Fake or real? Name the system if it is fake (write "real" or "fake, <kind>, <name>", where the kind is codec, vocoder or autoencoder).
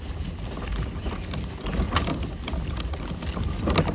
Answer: real